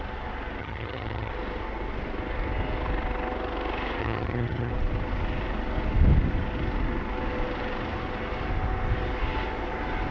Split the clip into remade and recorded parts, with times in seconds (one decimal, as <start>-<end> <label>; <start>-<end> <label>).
0.0-0.6 recorded; 0.6-1.3 remade; 1.3-4.0 recorded; 4.0-4.7 remade; 4.7-10.1 recorded